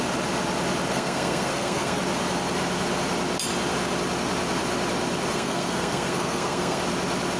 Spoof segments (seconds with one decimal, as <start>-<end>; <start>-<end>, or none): 0.9-2.0; 5.3-6.8